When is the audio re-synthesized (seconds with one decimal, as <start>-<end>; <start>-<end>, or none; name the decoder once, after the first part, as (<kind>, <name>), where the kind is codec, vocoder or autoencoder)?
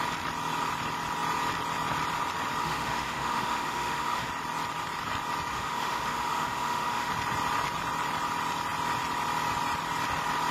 2.6-4.3 (autoencoder, DAC-VAE); 5.5-7.1